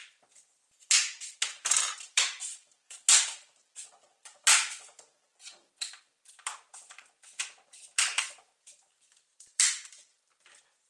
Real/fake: fake